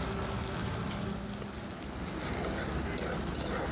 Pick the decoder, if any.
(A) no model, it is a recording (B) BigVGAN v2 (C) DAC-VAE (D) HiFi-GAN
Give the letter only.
A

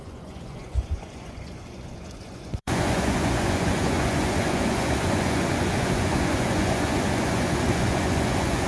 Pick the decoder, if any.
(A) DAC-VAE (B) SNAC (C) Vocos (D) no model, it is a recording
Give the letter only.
C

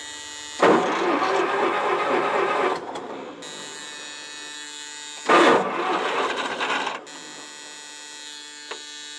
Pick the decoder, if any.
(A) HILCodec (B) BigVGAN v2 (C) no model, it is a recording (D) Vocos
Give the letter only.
C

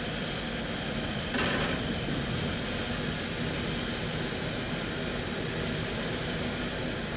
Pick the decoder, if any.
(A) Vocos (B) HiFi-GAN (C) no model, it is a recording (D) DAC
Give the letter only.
C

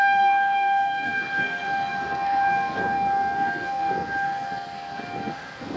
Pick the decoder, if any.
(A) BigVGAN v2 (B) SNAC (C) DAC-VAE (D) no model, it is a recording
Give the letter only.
B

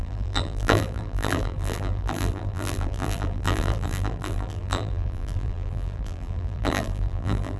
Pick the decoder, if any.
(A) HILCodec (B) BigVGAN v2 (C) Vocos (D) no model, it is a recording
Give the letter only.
B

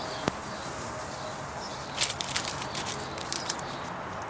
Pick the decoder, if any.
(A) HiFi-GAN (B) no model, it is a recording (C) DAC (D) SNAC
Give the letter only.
B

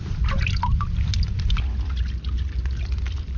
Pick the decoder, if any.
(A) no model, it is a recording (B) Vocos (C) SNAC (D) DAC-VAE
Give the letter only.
A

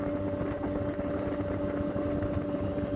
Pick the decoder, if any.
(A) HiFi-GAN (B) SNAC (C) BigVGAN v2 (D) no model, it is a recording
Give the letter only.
D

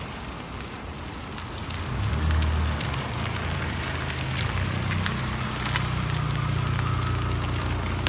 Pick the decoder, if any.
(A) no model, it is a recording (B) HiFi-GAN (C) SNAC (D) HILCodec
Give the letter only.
A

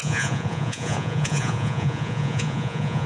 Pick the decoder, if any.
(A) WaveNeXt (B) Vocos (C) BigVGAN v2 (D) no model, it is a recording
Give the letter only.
B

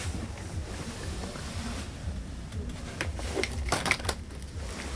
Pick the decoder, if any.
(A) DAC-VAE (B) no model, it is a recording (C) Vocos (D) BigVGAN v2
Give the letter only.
B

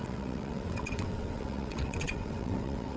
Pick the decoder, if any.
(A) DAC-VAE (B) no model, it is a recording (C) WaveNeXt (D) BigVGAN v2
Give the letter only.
C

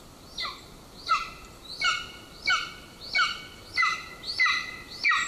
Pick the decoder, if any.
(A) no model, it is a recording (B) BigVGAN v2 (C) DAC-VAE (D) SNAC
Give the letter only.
A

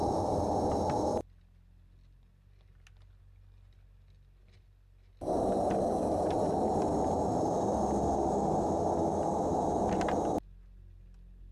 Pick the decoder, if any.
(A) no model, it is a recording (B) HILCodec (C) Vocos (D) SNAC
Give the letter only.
A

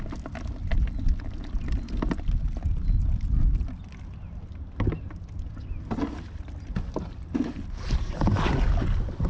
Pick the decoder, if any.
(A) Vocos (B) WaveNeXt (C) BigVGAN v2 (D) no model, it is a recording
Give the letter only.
D